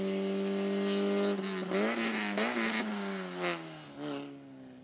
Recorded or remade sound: recorded